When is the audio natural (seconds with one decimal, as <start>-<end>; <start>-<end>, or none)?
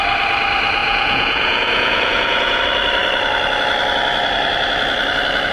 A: 0.0-0.8; 2.6-5.5